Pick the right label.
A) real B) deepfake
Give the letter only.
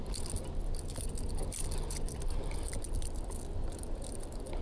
A